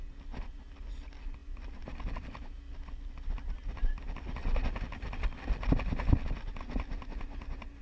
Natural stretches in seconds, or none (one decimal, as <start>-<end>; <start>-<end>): 0.0-7.8